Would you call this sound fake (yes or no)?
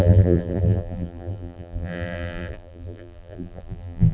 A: yes